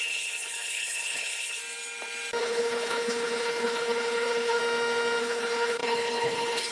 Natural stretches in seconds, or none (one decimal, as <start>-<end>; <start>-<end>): 1.6-2.4; 4.6-5.2